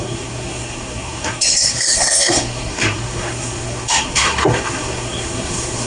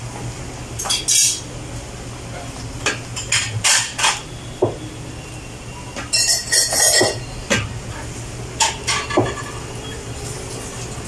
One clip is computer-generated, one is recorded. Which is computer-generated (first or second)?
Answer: first